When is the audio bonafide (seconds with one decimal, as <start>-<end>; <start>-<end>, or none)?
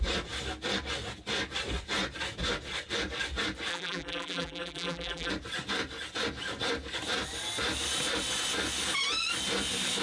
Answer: 0.0-3.7; 5.3-10.0